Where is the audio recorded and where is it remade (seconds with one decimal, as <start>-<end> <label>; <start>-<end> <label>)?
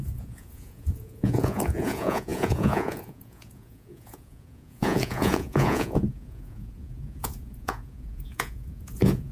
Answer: 0.0-9.3 remade